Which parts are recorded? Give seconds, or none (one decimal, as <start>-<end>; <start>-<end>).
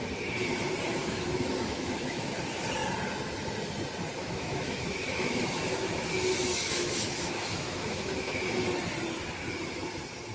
0.0-1.0; 2.3-4.2; 8.4-10.3